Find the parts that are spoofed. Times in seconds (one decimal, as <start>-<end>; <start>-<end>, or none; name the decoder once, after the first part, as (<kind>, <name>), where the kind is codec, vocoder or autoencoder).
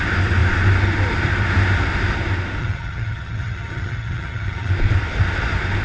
2.6-4.7 (vocoder, HiFi-GAN)